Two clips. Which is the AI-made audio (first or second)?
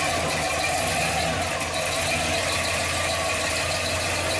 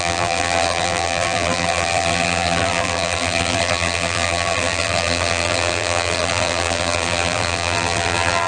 second